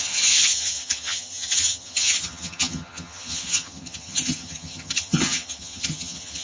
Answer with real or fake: fake